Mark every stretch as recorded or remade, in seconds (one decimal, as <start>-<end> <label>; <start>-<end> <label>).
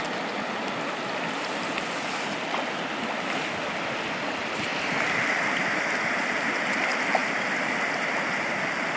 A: 0.0-9.0 recorded